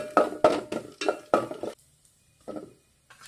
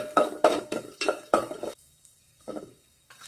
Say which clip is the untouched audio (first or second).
first